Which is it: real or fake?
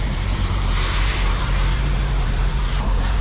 fake